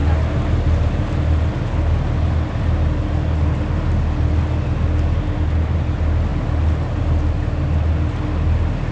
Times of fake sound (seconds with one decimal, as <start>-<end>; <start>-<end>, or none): none